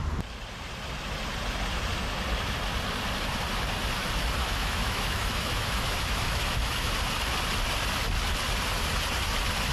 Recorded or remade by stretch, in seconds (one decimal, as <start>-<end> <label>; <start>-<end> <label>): 0.0-4.4 recorded; 4.4-6.9 remade; 6.9-9.7 recorded